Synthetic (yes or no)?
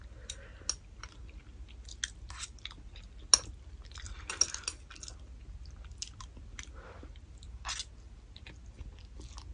no